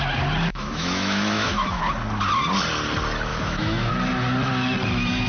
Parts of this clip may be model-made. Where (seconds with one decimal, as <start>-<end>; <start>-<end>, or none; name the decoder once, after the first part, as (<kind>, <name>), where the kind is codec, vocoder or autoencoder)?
0.5-1.8 (autoencoder, DAC-VAE); 3.3-3.9